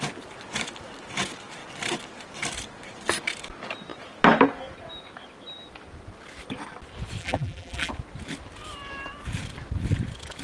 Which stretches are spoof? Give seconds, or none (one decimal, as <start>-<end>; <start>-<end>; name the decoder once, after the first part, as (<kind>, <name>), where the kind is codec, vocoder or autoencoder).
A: 7.2-7.9 (vocoder, BigVGAN v2)